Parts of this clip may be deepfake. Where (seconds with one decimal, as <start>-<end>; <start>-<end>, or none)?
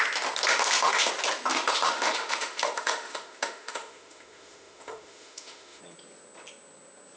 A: 0.5-1.1; 1.5-5.8